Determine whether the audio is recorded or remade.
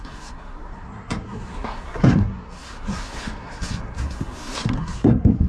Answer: remade